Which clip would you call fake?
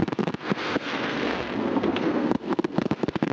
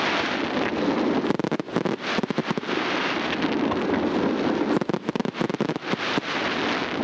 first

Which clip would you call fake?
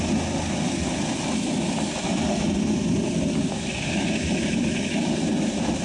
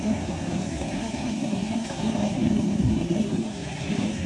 second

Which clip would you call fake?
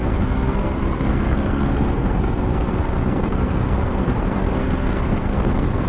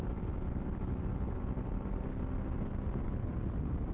first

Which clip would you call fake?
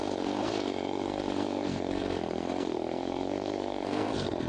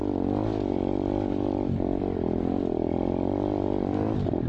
first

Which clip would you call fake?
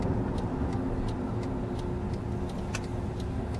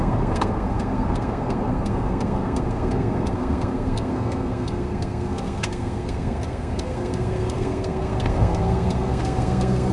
second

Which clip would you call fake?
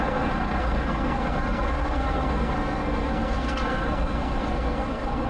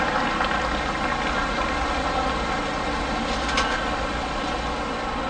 first